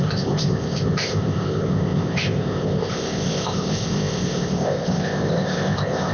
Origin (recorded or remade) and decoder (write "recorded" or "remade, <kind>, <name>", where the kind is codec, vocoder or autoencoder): remade, codec, ZipCodec